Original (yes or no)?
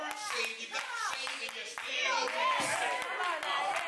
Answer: yes